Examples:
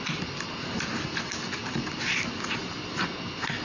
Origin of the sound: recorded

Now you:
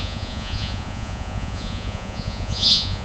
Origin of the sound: remade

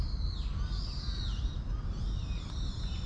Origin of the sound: recorded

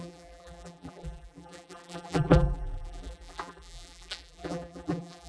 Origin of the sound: remade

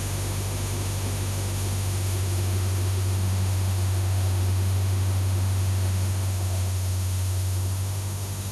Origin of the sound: remade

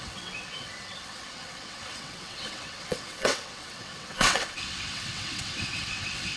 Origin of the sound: remade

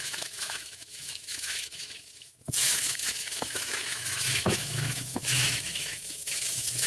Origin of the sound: remade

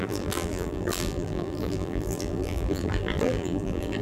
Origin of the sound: remade